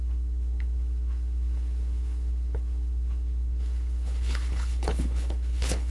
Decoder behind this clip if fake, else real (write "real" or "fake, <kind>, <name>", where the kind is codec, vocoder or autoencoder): fake, codec, HILCodec